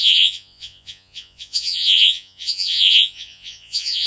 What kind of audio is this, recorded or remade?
remade